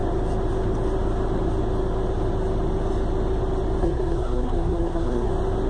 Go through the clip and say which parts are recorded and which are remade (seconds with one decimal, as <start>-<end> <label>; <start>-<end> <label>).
0.0-3.8 recorded; 3.8-5.3 remade; 5.3-5.7 recorded